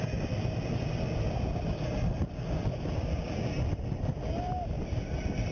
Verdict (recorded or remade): recorded